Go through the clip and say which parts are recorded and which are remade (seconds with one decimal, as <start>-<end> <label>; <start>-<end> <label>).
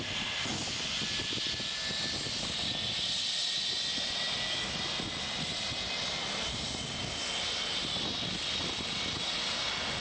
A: 0.0-0.5 recorded; 0.5-1.0 remade; 1.0-10.0 recorded